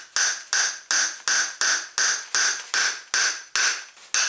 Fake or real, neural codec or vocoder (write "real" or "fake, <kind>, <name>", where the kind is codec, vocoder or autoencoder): real